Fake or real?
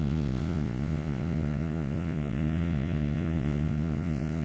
fake